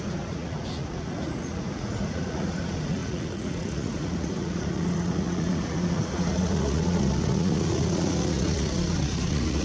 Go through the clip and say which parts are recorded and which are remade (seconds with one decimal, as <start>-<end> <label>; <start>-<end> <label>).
0.0-9.6 remade